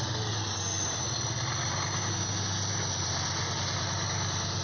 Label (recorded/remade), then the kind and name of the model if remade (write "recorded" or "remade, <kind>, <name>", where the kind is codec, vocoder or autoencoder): recorded